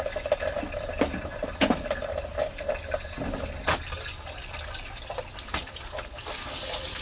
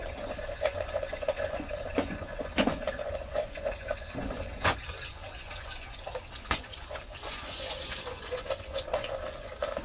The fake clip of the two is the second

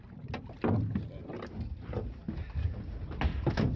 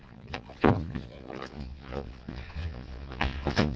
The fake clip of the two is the second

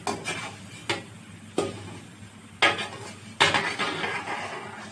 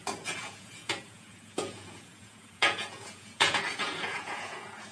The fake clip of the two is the second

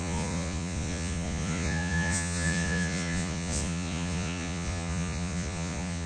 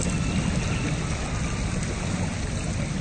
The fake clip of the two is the first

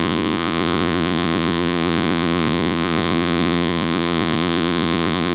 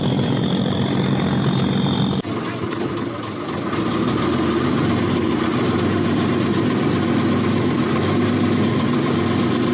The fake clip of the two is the first